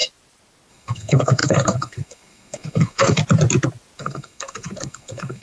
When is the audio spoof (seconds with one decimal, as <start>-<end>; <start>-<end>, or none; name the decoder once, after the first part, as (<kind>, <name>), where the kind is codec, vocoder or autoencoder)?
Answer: 0.7-3.2 (codec, SNAC); 4.0-5.4